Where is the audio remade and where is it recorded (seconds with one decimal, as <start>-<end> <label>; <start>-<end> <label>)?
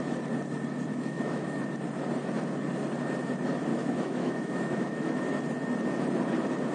0.0-0.9 recorded; 0.9-1.6 remade; 1.6-3.7 recorded; 3.7-5.2 remade; 5.2-6.7 recorded